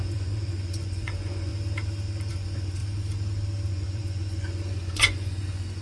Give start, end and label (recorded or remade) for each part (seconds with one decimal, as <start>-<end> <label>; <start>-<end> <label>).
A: 0.0-1.5 remade; 1.5-2.3 recorded; 2.3-2.8 remade; 2.8-3.7 recorded; 3.7-5.8 remade